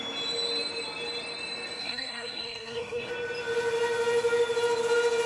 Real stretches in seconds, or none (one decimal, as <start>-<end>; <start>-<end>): 0.0-1.8; 3.1-5.3